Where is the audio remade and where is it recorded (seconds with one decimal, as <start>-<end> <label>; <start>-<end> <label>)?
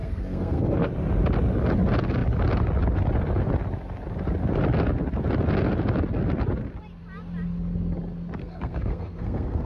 0.0-0.9 remade; 0.9-8.4 recorded; 8.4-9.7 remade